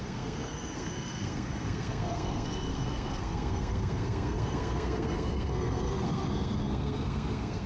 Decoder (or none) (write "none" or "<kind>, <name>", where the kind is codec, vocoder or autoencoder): codec, SNAC